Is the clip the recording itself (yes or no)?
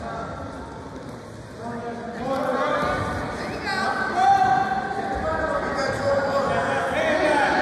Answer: yes